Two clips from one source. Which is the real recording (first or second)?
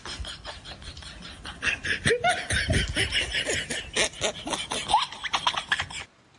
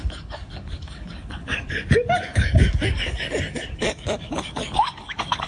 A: first